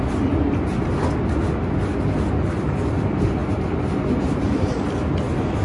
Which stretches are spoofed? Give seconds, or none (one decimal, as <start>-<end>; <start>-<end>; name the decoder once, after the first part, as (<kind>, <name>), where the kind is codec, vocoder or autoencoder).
3.4-4.7 (vocoder, BigVGAN v2)